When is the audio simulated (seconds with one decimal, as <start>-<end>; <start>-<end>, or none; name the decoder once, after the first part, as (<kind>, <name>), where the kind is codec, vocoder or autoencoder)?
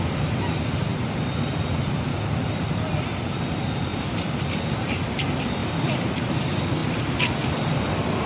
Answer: 3.9-4.4 (vocoder, BigVGAN v2); 5.6-6.3